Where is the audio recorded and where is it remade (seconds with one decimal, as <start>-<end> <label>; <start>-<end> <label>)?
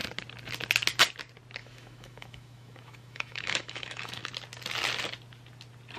0.0-1.6 recorded; 1.6-4.3 remade; 4.3-6.0 recorded